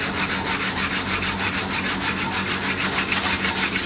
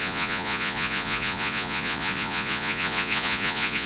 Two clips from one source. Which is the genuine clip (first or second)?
first